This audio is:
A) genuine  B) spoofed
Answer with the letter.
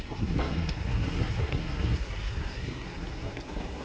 B